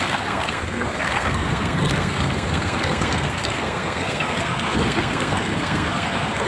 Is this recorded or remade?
remade